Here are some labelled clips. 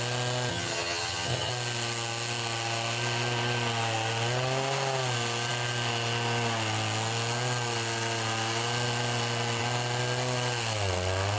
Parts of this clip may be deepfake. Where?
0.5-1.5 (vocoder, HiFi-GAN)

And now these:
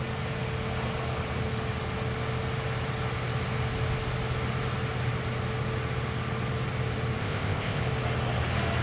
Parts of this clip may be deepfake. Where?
7.2-7.8 (codec, ZipCodec)

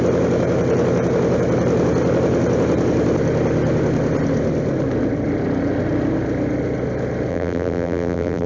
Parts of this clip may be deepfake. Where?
7.3-8.5 (vocoder, BigVGAN v2)

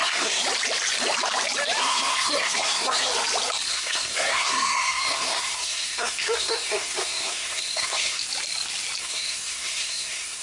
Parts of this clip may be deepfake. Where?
0.0-0.4 (codec, SNAC); 1.8-3.1; 3.7-8.2; 9.0-10.4